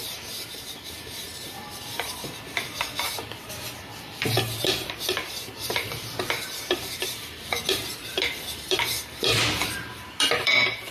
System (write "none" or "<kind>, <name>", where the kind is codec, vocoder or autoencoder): vocoder, BigVGAN v2